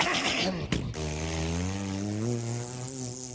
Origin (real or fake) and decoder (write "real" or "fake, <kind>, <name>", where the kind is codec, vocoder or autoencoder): real